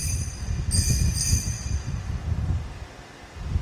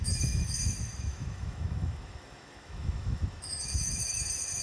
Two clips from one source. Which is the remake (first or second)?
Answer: second